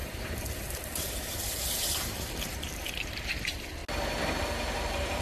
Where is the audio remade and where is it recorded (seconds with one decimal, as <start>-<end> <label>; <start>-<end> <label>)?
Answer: 0.0-3.8 remade; 3.8-4.4 recorded; 4.4-5.2 remade

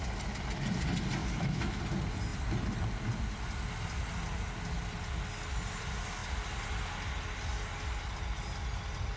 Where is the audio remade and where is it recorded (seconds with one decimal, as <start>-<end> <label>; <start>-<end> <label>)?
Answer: 0.0-1.2 recorded; 1.2-1.8 remade; 1.8-9.2 recorded

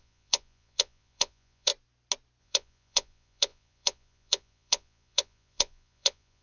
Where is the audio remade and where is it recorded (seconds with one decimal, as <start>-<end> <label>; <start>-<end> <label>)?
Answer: 0.0-1.7 remade; 1.7-2.4 recorded; 2.4-6.4 remade